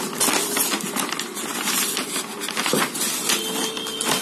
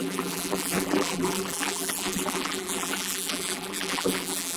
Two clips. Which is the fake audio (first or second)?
second